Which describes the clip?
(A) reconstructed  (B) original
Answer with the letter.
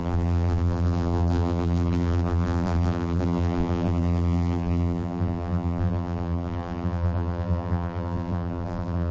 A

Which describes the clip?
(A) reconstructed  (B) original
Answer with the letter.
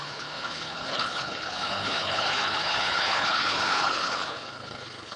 A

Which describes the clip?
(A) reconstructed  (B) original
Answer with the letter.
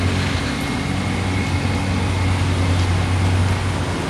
B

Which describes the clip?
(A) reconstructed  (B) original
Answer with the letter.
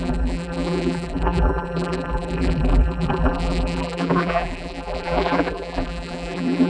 A